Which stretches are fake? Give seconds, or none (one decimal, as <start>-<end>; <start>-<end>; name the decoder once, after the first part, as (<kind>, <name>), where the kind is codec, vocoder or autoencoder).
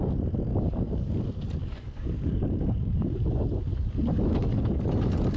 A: 0.5-1.1 (codec, DAC); 1.6-4.8